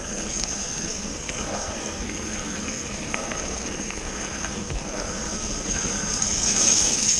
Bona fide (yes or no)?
no